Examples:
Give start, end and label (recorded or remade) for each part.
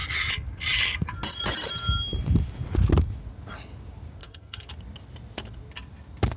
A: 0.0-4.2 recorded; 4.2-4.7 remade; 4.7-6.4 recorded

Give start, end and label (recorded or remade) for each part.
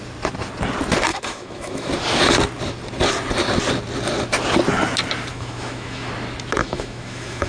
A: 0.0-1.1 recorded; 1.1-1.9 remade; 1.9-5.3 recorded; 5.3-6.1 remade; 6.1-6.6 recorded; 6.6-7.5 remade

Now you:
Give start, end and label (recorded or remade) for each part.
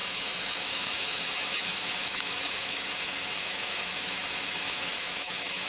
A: 0.0-5.7 remade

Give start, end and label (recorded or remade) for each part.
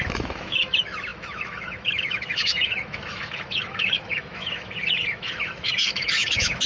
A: 0.0-6.7 remade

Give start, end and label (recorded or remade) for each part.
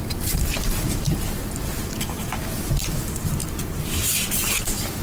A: 0.0-2.3 remade; 2.3-2.8 recorded; 2.8-5.0 remade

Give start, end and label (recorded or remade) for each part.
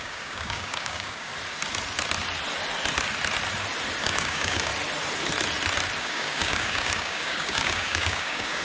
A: 0.0-1.3 remade; 1.3-4.0 recorded; 4.0-4.7 remade; 4.7-6.0 recorded; 6.0-8.6 remade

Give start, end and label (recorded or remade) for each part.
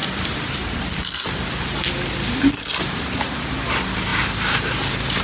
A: 0.0-3.1 remade; 3.1-4.1 recorded; 4.1-5.2 remade